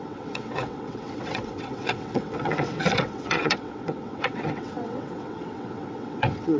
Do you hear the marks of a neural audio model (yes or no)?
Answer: yes